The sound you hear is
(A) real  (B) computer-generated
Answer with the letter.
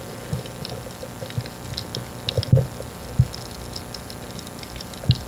A